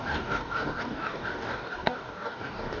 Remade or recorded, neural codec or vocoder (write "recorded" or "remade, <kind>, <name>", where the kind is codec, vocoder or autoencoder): remade, codec, DAC